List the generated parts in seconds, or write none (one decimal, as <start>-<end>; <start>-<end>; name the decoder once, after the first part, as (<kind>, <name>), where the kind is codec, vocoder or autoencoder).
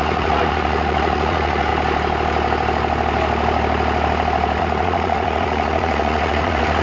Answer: 0.0-1.7 (vocoder, Vocos); 4.6-6.8